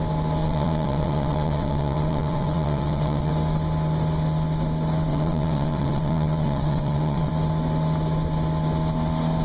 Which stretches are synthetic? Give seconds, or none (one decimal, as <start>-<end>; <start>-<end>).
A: 0.4-3.3; 5.1-7.3